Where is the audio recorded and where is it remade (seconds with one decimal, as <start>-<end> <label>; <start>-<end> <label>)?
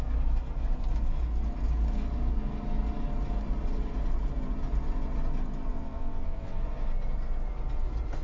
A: 0.0-5.7 recorded; 5.7-6.6 remade; 6.6-8.2 recorded